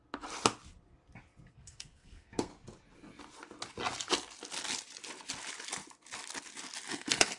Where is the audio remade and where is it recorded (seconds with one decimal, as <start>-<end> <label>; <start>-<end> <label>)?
0.0-1.5 recorded; 1.5-2.5 remade; 2.5-6.9 recorded; 6.9-7.4 remade